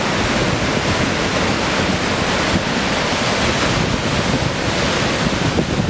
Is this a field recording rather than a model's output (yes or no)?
yes